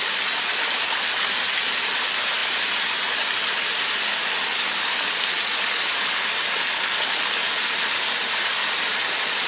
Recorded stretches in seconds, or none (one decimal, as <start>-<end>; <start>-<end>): 0.0-9.5